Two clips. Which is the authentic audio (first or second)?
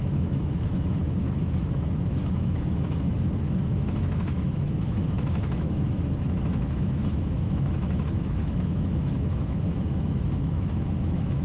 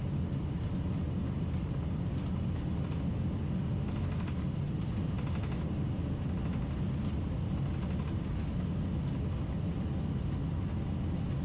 second